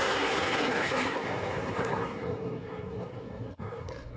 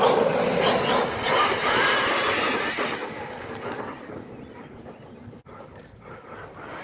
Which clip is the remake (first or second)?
first